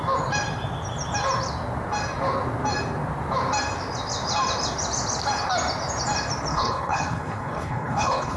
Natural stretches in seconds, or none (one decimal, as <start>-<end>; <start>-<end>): 0.0-6.5